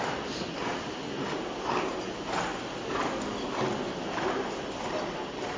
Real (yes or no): yes